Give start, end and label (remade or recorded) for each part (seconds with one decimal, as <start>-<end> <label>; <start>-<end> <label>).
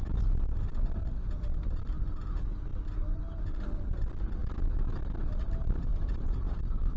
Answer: 0.0-7.0 recorded